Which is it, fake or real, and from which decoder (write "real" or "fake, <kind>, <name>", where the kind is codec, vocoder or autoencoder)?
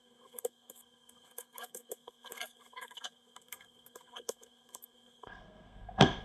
fake, codec, SNAC